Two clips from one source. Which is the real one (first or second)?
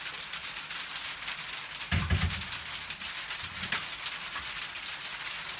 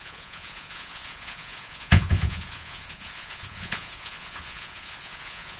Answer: first